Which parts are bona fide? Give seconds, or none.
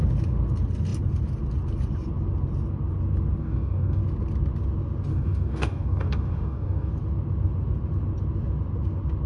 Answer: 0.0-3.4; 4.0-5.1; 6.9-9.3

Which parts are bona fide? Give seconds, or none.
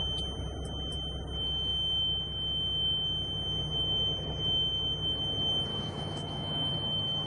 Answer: 0.0-5.7; 6.7-7.3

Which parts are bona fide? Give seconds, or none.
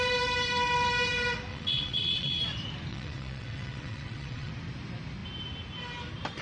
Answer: 0.0-1.5; 2.4-2.9; 4.5-6.4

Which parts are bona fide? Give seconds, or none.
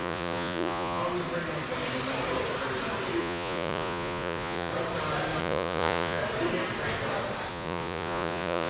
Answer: 1.0-3.2; 4.7-5.4; 6.2-7.5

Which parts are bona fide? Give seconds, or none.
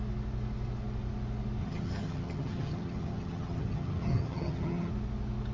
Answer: 0.0-1.6; 4.9-5.5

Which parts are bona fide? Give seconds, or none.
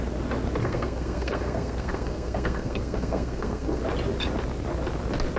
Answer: 0.0-0.6; 3.8-5.4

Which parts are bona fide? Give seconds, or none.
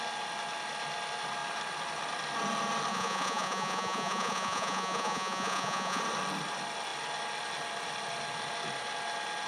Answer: 0.0-2.9; 6.0-9.5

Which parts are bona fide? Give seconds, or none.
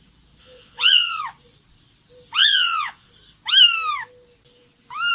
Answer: 0.0-0.4; 1.2-2.4; 3.1-5.1